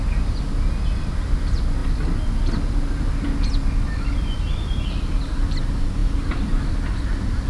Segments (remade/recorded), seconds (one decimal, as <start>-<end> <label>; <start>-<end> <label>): 0.0-7.5 recorded